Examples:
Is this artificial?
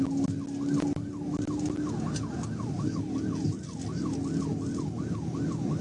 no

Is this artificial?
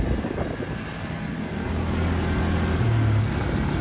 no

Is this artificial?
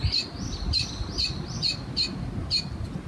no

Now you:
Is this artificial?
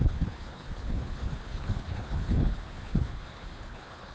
yes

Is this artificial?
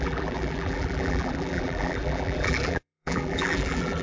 yes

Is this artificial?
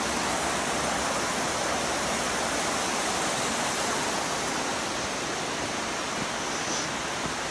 no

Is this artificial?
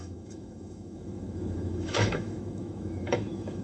yes